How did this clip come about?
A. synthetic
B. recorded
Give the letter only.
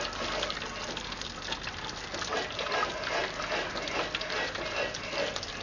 B